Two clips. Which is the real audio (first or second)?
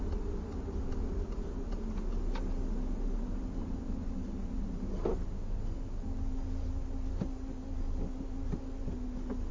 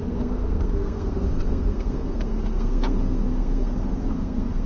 first